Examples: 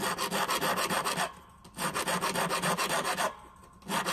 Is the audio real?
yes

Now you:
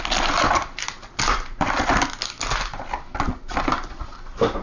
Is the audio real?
yes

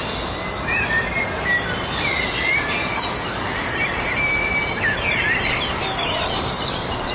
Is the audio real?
yes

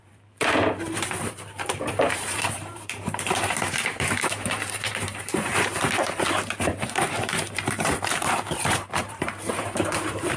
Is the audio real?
no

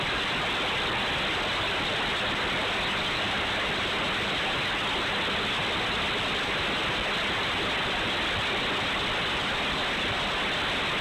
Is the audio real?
yes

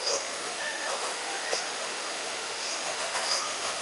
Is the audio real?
no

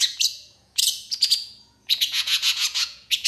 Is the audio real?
no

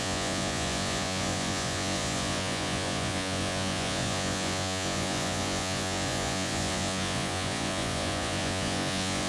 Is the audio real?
no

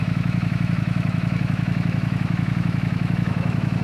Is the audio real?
no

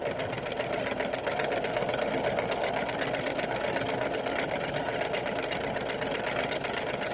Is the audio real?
yes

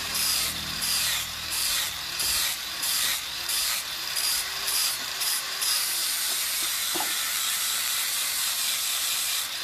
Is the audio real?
no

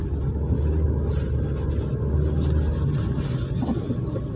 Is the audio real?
yes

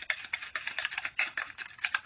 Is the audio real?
yes